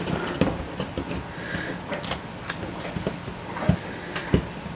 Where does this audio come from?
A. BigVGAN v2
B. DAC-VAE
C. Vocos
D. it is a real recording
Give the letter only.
D